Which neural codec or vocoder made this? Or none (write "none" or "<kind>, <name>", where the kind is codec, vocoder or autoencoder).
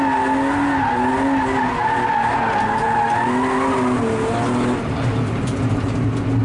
none